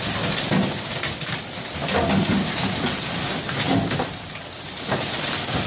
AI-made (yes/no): no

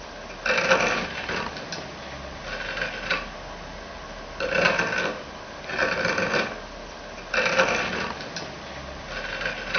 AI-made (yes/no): no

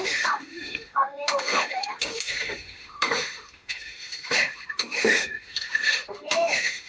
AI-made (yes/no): yes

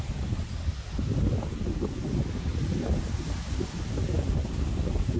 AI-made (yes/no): no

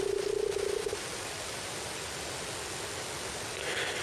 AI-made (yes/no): no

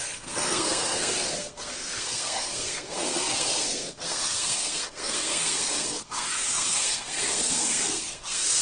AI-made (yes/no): yes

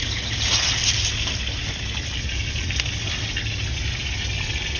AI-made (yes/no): no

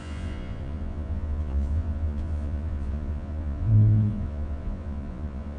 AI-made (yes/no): yes